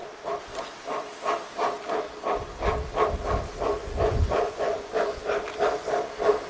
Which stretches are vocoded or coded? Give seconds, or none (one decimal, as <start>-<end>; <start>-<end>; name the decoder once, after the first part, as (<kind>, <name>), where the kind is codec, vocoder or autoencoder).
3.8-5.2 (vocoder, Vocos)